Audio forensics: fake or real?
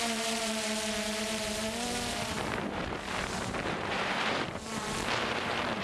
fake